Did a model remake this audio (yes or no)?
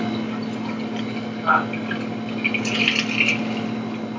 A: no